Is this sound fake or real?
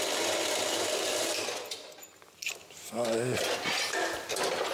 real